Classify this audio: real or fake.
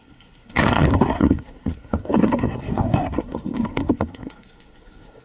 fake